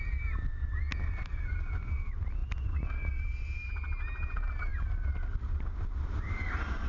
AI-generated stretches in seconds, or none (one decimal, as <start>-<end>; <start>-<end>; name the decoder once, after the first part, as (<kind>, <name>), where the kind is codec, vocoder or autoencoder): none